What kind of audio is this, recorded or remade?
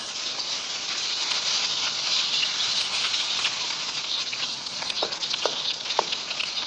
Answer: remade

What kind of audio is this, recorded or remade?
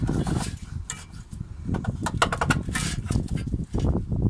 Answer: recorded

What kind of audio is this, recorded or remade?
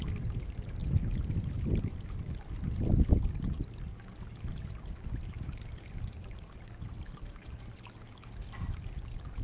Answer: recorded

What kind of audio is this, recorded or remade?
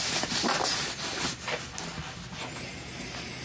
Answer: recorded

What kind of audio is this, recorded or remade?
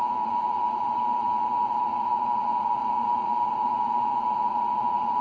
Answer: remade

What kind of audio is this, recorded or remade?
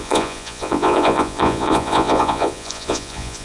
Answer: remade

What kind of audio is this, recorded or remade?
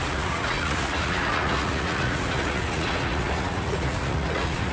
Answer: remade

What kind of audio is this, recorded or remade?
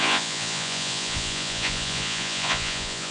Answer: remade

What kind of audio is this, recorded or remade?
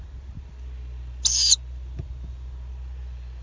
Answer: recorded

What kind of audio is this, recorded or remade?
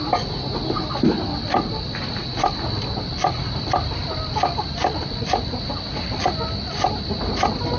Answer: recorded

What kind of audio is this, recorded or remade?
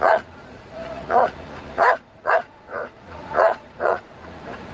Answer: remade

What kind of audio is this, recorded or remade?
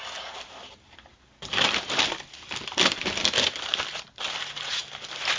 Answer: recorded